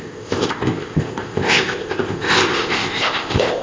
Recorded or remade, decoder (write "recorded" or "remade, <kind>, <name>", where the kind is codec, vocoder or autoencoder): remade, codec, ZipCodec